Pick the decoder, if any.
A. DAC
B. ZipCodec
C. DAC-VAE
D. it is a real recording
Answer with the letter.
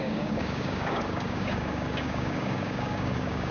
A